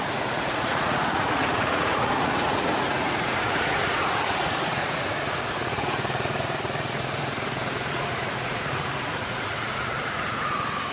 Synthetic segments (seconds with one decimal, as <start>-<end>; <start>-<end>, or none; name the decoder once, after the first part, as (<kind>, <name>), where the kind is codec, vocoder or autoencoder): 0.0-10.9 (vocoder, Vocos)